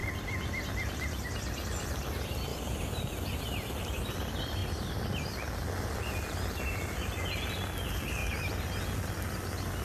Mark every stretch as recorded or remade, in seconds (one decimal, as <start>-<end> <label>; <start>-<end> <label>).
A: 0.0-2.5 recorded; 2.5-3.1 remade; 3.1-8.2 recorded; 8.2-8.8 remade; 8.8-9.8 recorded